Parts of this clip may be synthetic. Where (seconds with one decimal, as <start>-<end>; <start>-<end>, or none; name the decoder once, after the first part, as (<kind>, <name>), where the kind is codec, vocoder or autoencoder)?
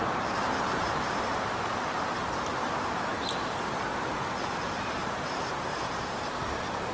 0.0-6.9 (vocoder, BigVGAN v2)